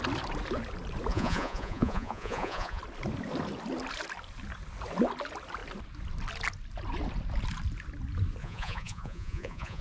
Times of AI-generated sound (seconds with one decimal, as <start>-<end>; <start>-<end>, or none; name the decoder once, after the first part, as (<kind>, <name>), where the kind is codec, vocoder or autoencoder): 1.1-2.8 (vocoder, Vocos); 8.4-9.8